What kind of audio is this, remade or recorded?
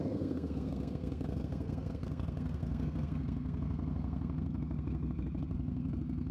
remade